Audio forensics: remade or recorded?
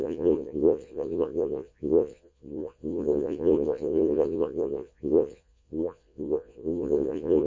remade